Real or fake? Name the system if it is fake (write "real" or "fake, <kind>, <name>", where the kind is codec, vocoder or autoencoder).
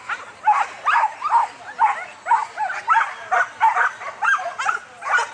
real